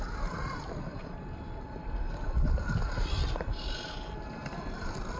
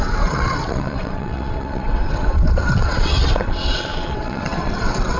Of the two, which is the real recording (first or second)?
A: first